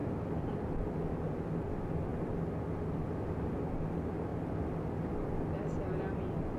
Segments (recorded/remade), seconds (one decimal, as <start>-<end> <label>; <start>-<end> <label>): 0.0-2.1 recorded; 2.1-2.6 remade; 2.6-6.6 recorded